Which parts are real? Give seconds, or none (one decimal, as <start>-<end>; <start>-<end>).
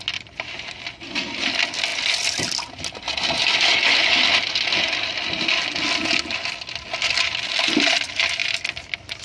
0.0-9.2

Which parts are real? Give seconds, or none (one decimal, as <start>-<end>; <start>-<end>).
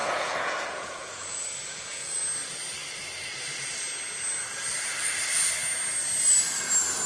2.2-7.1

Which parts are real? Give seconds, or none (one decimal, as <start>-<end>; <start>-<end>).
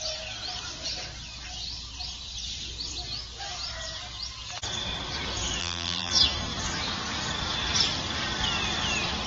0.0-5.6; 6.1-9.3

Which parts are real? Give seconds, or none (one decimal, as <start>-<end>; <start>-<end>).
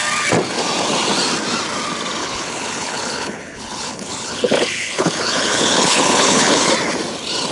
0.0-2.2; 6.7-7.5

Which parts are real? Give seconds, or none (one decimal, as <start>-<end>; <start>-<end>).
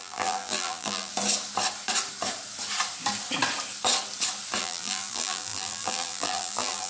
1.1-4.6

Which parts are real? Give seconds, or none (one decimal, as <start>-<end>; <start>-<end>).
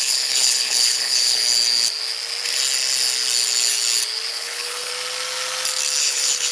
1.4-4.3; 4.9-6.0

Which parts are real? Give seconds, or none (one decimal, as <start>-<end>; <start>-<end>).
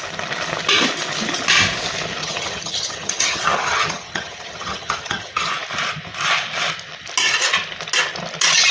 0.0-2.2; 5.5-8.7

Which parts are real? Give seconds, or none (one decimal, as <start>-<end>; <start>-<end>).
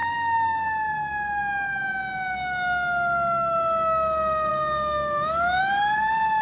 0.0-6.4